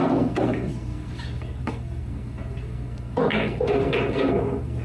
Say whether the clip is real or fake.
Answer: fake